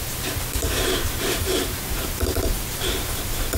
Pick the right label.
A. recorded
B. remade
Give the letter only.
B